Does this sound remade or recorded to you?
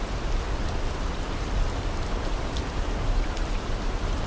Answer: remade